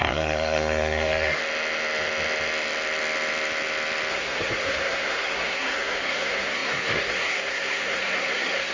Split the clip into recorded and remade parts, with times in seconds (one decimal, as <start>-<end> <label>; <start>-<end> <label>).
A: 0.0-1.4 remade; 1.4-4.1 recorded; 4.1-8.7 remade